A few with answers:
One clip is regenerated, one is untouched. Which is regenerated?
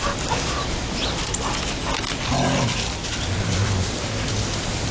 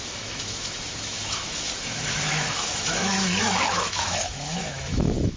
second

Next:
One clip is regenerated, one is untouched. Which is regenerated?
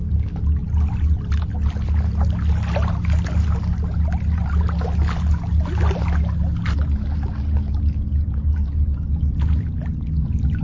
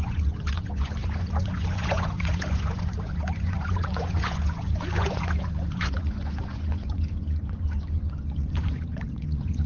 second